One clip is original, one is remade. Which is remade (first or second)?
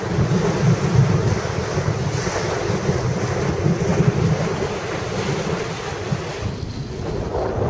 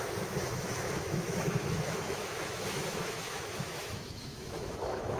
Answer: second